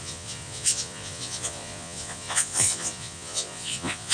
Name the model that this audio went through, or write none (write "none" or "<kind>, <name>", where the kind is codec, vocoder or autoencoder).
vocoder, Vocos